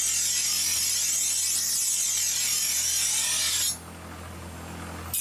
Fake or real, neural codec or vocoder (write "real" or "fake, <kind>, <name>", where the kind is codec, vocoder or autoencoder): real